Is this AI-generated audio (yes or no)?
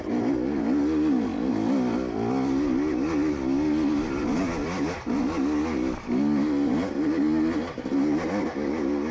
no